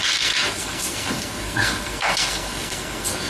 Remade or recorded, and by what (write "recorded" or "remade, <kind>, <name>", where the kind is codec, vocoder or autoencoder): remade, codec, SNAC